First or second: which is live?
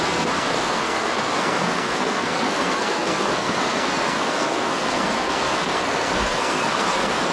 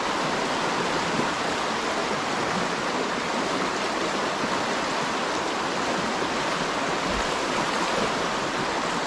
second